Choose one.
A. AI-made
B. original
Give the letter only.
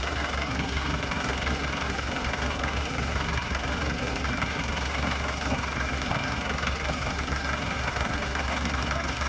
A